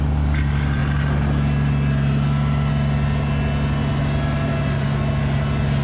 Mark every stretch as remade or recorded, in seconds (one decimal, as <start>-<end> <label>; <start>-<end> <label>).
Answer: 0.0-5.8 recorded